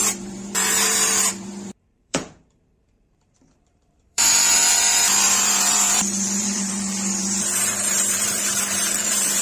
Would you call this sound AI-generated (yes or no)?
yes